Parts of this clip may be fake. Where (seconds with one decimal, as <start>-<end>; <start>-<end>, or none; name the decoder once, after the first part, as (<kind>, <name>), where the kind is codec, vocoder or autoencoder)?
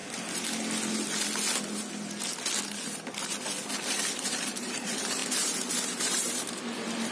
4.3-7.1 (vocoder, BigVGAN v2)